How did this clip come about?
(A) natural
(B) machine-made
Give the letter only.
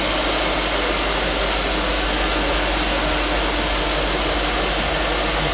A